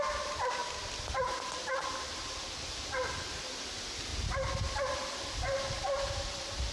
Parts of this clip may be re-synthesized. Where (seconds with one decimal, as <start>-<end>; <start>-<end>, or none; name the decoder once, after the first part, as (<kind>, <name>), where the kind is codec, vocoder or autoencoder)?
0.0-0.6 (vocoder, BigVGAN v2); 3.1-4.1